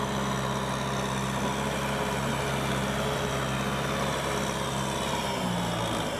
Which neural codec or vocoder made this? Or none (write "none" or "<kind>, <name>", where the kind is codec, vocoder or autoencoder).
none